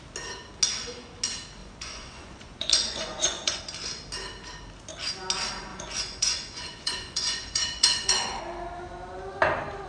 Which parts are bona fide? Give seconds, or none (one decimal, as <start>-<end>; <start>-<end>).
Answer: 0.0-1.6; 3.6-5.7; 8.4-9.9